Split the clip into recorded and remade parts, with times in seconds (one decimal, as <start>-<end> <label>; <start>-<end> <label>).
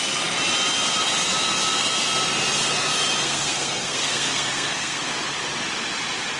0.0-3.2 recorded; 3.2-5.0 remade; 5.0-6.4 recorded